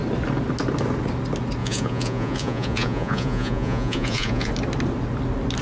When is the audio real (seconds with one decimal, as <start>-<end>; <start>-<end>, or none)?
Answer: 0.0-1.6; 4.5-5.6

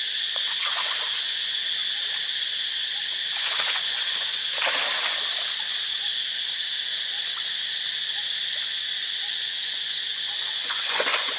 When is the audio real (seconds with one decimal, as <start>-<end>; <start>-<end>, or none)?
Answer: 1.8-3.6; 4.5-9.3

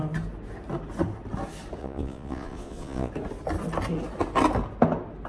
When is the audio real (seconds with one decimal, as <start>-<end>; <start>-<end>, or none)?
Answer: 0.0-1.8; 3.1-5.3

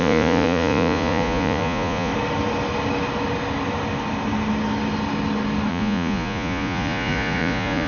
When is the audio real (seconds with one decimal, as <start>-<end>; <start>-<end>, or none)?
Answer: 2.1-5.7